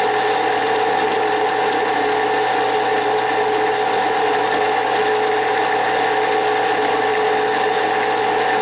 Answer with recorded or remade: recorded